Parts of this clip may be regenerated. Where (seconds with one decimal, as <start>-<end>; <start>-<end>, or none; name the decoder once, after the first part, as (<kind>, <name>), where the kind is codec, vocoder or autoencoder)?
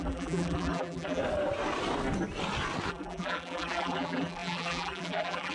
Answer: 0.0-1.2 (vocoder, BigVGAN v2); 2.9-5.5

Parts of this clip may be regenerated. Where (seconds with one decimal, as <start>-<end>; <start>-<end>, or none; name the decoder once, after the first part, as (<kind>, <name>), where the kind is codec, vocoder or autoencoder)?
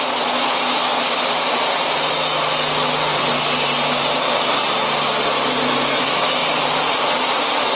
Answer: 0.9-2.1 (vocoder, BigVGAN v2); 3.1-5.1; 6.4-7.8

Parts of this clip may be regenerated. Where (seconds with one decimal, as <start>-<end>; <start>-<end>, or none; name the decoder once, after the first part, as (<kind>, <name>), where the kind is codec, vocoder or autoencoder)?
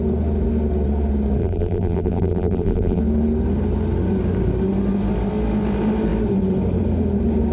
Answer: 1.4-3.0 (vocoder, BigVGAN v2)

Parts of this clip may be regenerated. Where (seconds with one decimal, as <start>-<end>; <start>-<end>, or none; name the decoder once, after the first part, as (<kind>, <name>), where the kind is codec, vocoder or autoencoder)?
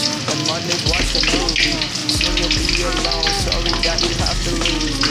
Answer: none